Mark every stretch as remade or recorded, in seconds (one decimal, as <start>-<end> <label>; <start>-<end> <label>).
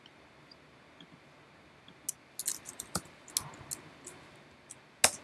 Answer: 0.0-2.5 recorded; 2.5-3.3 remade; 3.3-5.2 recorded